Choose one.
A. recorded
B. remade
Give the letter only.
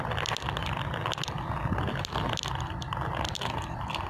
B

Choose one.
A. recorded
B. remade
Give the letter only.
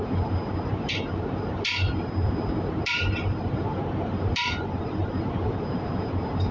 B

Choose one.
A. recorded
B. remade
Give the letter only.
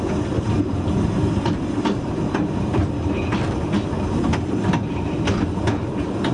A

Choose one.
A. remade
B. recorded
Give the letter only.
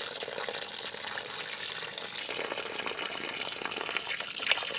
B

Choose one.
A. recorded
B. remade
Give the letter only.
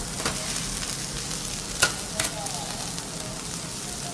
A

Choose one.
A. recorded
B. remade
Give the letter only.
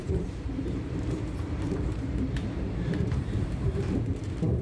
B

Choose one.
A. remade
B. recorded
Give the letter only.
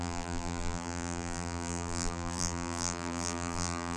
A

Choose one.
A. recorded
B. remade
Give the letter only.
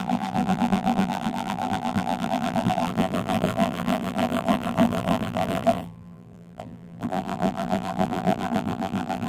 B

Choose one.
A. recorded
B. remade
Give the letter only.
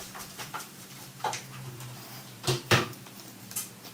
B